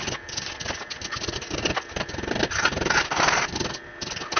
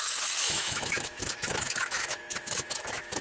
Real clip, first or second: first